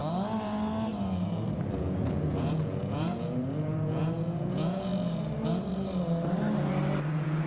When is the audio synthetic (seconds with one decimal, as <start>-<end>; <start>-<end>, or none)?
1.7-4.9; 7.1-7.5